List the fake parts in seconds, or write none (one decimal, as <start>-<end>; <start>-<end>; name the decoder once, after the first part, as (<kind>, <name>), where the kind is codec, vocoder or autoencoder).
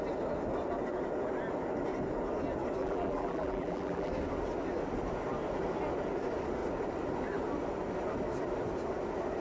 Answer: 2.8-4.1 (vocoder, BigVGAN v2)